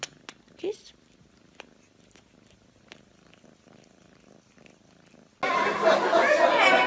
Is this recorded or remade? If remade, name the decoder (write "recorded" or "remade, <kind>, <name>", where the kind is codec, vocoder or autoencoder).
recorded